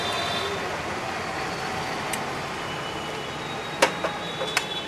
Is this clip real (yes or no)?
yes